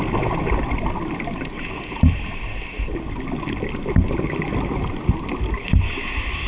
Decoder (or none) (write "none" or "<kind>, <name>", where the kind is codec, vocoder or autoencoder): none